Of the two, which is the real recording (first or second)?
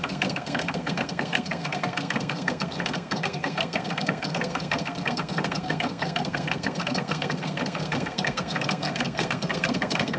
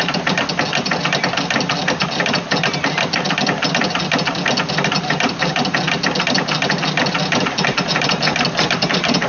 second